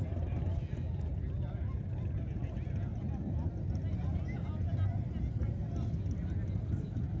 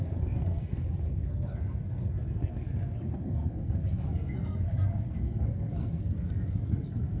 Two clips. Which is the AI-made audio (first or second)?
second